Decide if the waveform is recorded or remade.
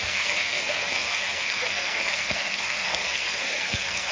remade